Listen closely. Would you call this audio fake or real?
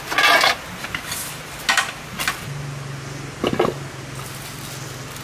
real